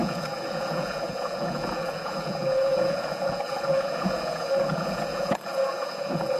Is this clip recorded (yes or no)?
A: no